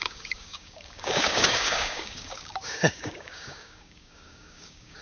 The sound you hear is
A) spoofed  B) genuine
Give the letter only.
A